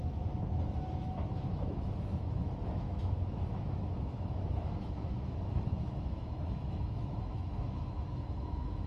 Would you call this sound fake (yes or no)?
yes